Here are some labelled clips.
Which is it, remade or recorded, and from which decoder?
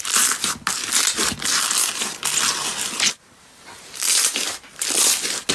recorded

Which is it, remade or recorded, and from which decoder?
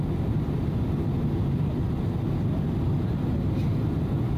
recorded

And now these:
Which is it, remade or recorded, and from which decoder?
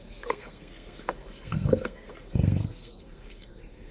remade, codec, SNAC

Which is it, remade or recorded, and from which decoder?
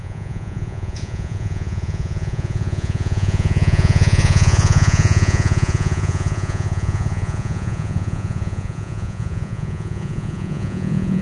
remade, vocoder, Vocos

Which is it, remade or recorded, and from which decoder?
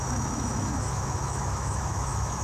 remade, autoencoder, DAC-VAE